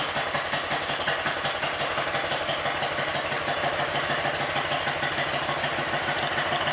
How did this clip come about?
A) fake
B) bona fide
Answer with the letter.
B